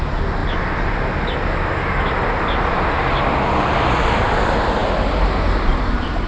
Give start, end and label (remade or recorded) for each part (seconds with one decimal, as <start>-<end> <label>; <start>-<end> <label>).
0.0-6.3 recorded